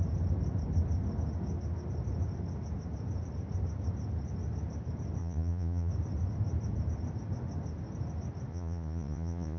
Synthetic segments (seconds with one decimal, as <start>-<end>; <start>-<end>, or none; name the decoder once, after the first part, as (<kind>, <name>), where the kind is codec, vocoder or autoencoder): 5.2-5.9 (vocoder, Vocos); 8.5-9.6